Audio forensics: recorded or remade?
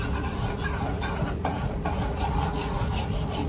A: remade